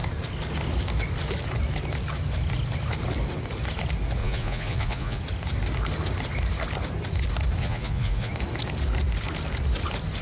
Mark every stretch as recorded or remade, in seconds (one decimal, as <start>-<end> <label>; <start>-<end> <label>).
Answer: 0.0-4.2 recorded; 4.2-5.2 remade; 5.2-7.6 recorded; 7.6-8.3 remade; 8.3-10.2 recorded